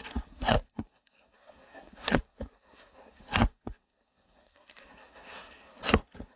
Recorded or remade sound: remade